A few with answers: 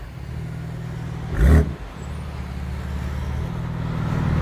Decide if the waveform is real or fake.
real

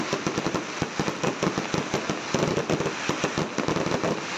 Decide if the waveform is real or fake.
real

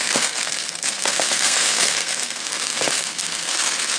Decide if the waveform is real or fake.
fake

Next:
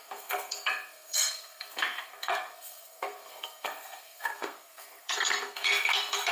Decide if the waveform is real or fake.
fake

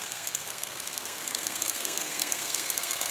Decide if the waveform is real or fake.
fake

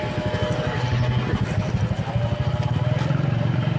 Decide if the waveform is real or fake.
real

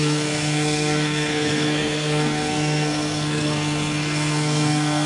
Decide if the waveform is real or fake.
fake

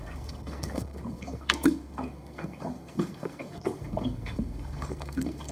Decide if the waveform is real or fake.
fake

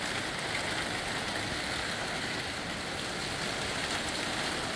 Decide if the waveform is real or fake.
real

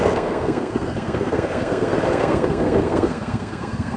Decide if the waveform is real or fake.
fake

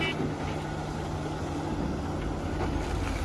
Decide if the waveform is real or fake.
real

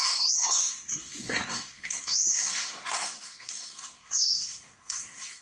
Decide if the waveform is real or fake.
fake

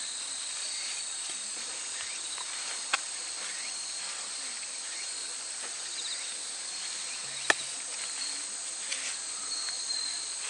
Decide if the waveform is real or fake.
real